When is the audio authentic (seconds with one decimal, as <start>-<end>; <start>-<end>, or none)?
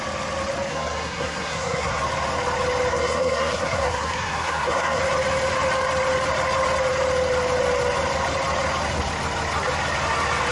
0.0-0.7; 2.0-2.9; 5.0-10.5